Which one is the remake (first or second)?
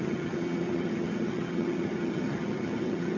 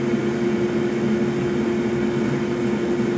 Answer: first